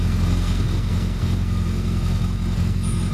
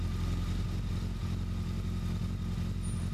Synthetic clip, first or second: first